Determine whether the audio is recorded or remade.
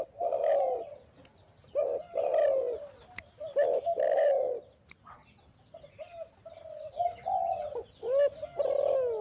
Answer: recorded